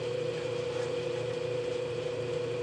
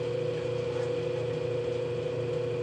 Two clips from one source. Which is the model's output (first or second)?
first